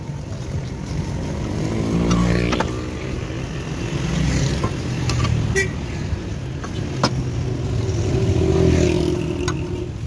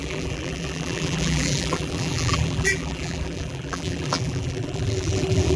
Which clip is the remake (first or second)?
second